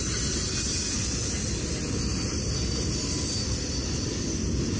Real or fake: real